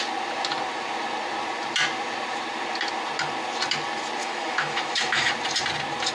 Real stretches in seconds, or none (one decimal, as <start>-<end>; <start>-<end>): 0.0-4.2; 5.3-6.1